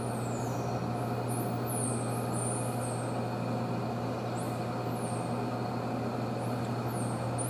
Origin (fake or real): real